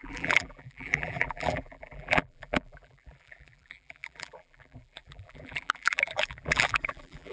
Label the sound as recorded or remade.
remade